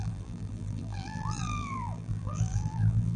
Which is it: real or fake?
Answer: fake